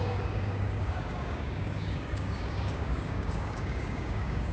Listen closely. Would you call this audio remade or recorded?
remade